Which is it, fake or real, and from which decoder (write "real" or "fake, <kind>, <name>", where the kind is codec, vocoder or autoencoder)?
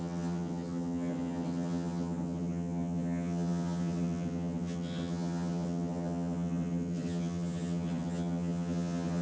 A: fake, vocoder, HiFi-GAN